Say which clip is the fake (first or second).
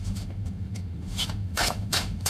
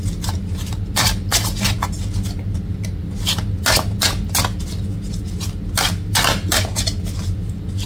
first